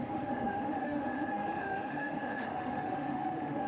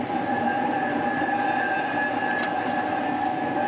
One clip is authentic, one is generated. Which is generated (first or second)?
first